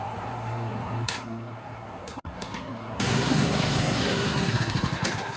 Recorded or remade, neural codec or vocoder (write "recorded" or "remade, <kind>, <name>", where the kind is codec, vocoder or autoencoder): remade, codec, SNAC